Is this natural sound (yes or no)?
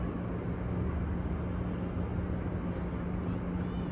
yes